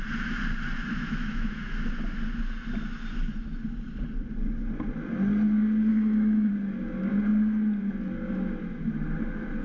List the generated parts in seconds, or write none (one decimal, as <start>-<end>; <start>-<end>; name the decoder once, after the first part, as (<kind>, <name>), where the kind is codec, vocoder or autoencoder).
0.9-1.8 (autoencoder, DAC-VAE); 5.9-6.5